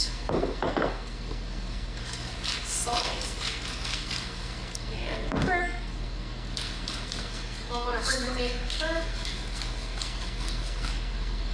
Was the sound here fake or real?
fake